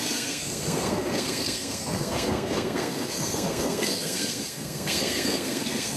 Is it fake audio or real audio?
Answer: fake